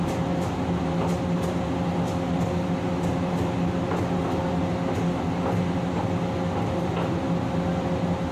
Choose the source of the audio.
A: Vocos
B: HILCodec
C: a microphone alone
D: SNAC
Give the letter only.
C